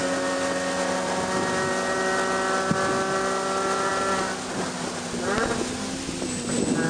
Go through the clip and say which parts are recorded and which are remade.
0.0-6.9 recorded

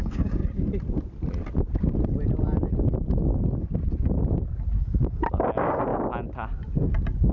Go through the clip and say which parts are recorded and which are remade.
0.0-0.4 remade; 0.4-4.8 recorded; 4.8-5.9 remade; 5.9-7.3 recorded

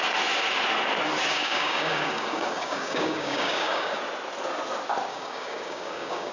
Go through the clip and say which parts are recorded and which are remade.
0.0-1.3 recorded; 1.3-4.0 remade; 4.0-5.1 recorded; 5.1-6.3 remade

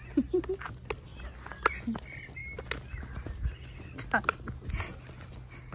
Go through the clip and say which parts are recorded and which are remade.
0.0-5.7 recorded

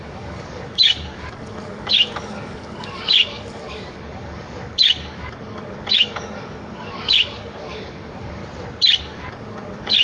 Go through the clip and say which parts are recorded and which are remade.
0.0-8.4 remade; 8.4-9.0 recorded; 9.0-10.0 remade